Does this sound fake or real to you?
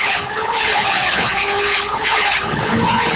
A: fake